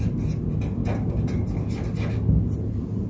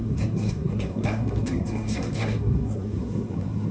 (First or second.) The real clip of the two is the first